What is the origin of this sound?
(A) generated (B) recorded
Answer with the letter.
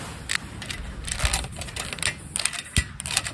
B